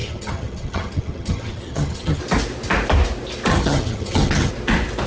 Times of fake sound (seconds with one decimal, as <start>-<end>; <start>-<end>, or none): 0.0-2.2; 3.5-4.5

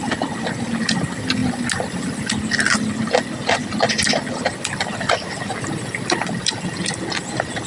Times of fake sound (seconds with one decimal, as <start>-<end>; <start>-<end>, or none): none

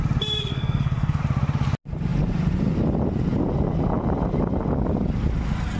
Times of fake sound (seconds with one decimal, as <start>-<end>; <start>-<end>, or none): 0.5-1.2

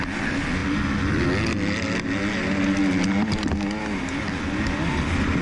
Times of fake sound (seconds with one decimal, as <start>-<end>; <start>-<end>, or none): none

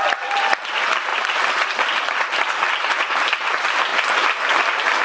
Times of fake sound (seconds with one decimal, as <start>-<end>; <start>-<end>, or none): none

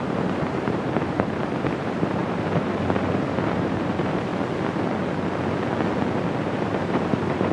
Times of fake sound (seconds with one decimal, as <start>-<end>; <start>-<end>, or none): 0.0-4.3; 6.4-7.5